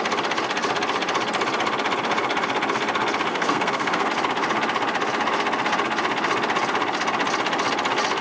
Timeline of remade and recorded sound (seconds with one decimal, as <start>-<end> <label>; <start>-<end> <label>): 0.0-3.3 recorded; 3.3-4.1 remade; 4.1-8.2 recorded